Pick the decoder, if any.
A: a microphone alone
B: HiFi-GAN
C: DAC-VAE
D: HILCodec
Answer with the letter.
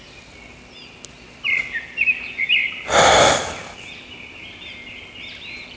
A